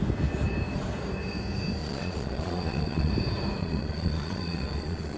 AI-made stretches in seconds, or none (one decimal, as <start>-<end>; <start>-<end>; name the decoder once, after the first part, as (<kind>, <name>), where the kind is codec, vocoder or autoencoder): 1.8-3.1 (vocoder, Vocos); 3.6-5.2

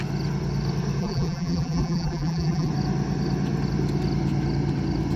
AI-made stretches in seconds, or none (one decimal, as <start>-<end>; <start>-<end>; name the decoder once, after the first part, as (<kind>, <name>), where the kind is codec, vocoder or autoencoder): 1.0-2.7 (vocoder, BigVGAN v2)

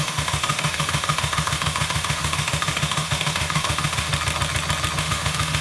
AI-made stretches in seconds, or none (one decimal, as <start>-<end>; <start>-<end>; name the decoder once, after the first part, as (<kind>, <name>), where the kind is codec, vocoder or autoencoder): 0.0-4.1 (autoencoder, DAC-VAE); 5.0-5.6

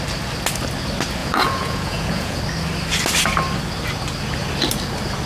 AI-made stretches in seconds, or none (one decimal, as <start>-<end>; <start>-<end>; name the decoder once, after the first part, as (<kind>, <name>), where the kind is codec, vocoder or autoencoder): 1.2-2.4 (vocoder, Vocos)